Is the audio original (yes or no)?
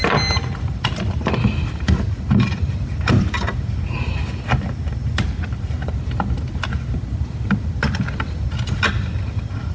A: yes